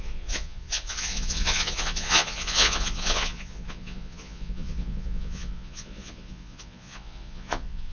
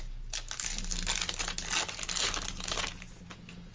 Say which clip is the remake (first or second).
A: first